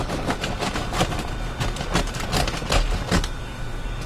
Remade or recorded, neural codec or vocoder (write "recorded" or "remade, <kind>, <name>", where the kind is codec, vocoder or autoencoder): recorded